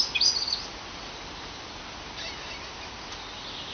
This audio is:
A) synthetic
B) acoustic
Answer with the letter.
B